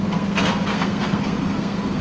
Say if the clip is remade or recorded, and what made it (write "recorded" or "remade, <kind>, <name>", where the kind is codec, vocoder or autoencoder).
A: remade, codec, SNAC